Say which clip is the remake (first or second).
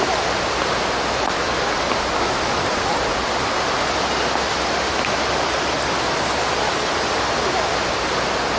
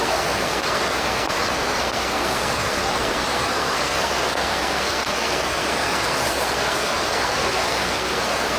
second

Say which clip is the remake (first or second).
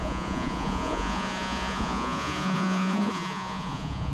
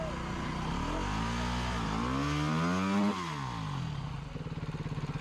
first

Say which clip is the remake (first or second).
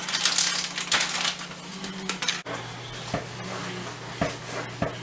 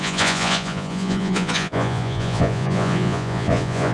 second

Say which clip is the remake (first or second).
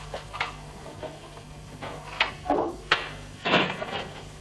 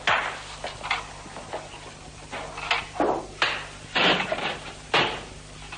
first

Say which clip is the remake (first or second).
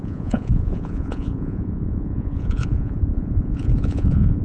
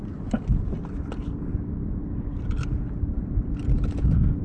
first